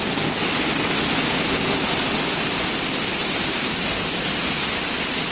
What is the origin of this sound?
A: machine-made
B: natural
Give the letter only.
B